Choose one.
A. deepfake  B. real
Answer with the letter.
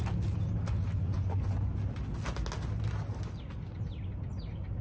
B